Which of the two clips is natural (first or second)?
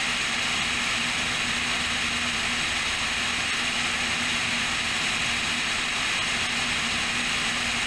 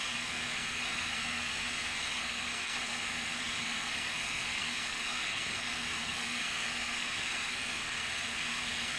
first